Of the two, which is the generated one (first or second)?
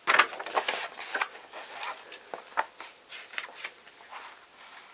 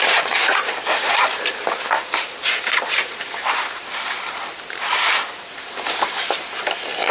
second